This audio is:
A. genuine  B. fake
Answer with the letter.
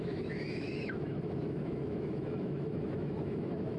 B